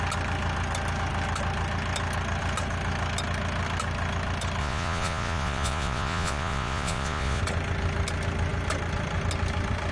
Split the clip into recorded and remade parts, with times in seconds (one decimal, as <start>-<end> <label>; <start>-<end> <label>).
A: 0.0-4.6 recorded; 4.6-7.4 remade; 7.4-9.9 recorded